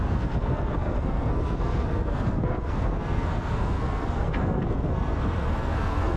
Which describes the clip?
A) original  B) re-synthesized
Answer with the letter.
B